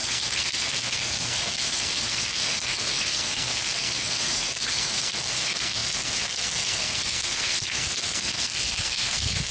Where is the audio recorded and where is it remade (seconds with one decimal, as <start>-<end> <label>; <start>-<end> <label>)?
0.0-9.5 remade